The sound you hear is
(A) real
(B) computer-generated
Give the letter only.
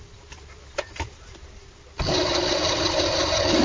A